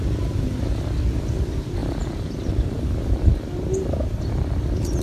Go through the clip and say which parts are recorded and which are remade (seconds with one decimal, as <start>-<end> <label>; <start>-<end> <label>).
0.0-5.0 recorded